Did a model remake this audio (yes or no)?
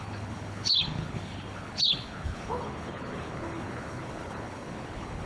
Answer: yes